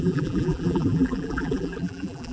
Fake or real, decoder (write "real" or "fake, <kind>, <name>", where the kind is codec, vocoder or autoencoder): fake, vocoder, BigVGAN v2